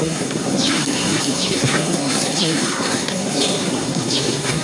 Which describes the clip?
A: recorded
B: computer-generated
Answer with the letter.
B